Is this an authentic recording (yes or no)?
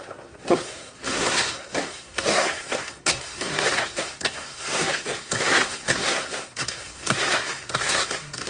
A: no